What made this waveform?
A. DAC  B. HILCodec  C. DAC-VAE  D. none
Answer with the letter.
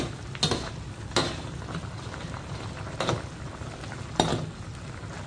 D